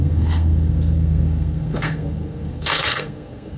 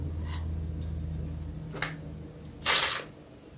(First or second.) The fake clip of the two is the first